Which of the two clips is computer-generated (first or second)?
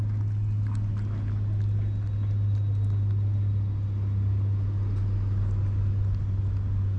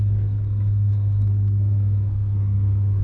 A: second